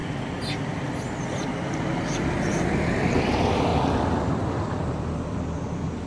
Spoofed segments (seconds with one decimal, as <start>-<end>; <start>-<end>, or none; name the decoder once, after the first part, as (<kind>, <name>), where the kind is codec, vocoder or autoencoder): 1.5-3.7 (vocoder, BigVGAN v2); 4.9-6.1

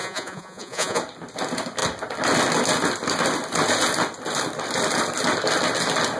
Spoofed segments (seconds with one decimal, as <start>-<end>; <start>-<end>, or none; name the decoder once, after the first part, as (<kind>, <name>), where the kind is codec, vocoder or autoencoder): 0.0-1.0 (vocoder, Vocos)

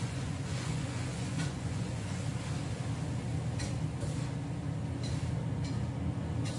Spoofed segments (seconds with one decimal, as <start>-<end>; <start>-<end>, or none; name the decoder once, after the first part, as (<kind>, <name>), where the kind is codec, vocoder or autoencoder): 0.0-2.3 (vocoder, Vocos)

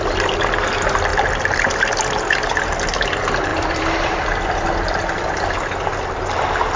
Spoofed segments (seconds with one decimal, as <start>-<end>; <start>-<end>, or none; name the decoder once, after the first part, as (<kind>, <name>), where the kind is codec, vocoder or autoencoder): 1.1-1.8 (vocoder, BigVGAN v2); 3.5-5.4

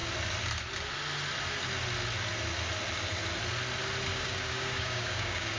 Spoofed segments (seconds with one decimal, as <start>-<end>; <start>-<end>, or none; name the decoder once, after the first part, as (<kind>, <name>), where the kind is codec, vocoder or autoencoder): 4.1-5.6 (codec, DAC)